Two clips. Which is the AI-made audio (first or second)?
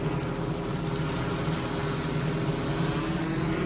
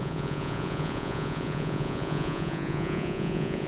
second